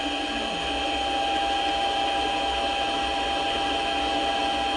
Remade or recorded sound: recorded